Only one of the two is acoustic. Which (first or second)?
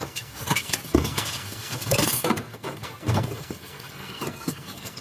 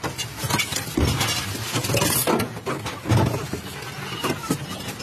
second